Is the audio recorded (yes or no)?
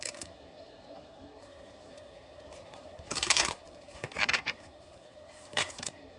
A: no